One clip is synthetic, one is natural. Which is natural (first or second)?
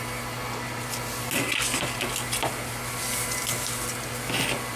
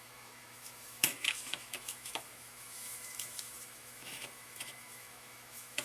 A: first